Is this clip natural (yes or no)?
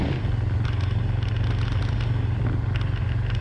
yes